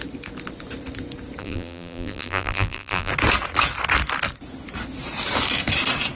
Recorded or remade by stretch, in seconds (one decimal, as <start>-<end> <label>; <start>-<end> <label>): 0.0-1.4 recorded; 1.4-3.1 remade; 3.1-6.2 recorded